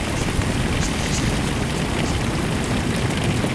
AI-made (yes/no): no